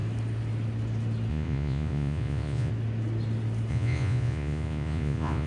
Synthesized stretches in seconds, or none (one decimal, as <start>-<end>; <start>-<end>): 1.3-2.7; 3.7-5.5